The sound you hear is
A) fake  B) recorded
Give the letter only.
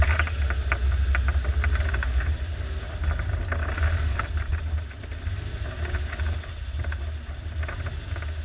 B